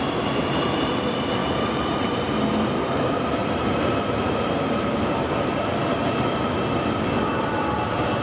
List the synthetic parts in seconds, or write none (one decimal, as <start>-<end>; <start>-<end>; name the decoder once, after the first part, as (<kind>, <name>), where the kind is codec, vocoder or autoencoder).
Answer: 1.4-2.2 (vocoder, BigVGAN v2); 3.4-6.3